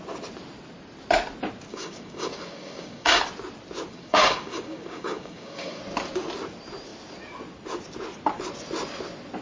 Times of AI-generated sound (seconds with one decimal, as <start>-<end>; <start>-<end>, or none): 1.7-3.2; 3.9-5.8